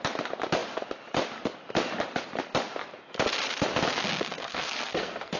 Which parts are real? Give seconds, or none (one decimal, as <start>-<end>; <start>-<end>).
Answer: 0.0-4.4

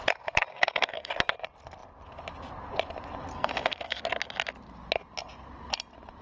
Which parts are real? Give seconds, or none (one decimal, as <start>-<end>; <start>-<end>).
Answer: 0.0-0.5; 1.1-3.3; 4.0-6.2